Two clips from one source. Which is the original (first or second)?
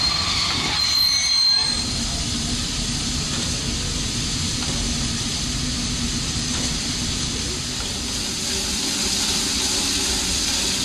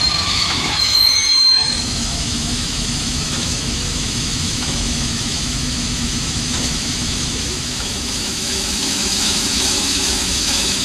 first